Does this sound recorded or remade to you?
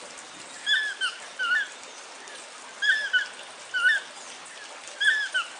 recorded